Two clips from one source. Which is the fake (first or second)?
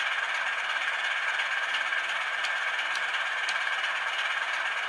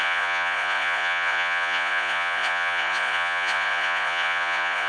second